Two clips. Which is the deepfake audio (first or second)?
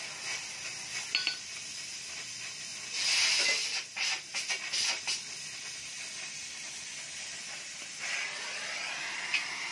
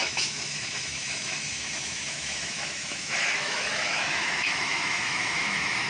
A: second